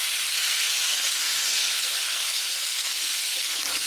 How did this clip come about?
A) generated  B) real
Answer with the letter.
A